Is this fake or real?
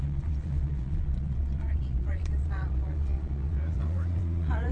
fake